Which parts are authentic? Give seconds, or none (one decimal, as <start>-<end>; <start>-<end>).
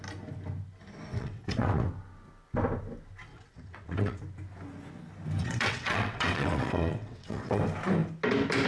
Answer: 0.0-1.1; 1.9-3.3; 4.2-5.4; 7.6-8.7